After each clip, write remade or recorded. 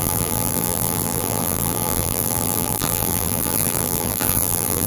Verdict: remade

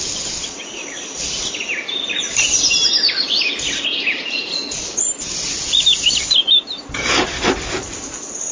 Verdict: recorded